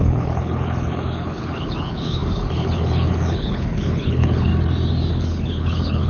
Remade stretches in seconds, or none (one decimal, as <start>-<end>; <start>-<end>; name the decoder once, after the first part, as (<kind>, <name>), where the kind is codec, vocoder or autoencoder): 0.0-4.5 (codec, HILCodec); 5.1-6.1